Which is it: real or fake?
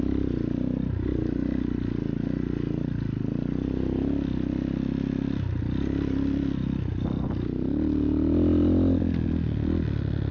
real